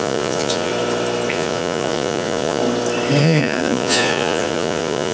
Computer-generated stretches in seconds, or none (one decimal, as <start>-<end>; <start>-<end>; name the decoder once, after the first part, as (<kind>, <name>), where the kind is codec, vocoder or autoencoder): 0.0-0.7 (vocoder, Vocos); 1.3-2.6; 3.2-5.1